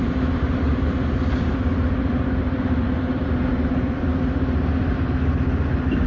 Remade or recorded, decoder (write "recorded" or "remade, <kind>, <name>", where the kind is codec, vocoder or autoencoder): remade, vocoder, BigVGAN v2